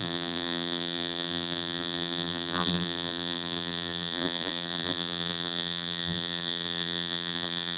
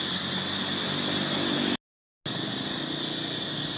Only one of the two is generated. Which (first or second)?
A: first